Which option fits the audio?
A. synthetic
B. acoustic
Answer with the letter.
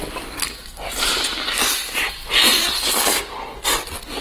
B